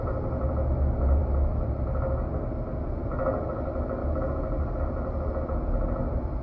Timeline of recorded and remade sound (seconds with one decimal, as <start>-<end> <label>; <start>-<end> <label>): 0.0-6.4 recorded